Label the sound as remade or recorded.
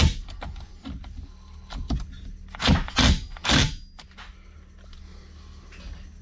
recorded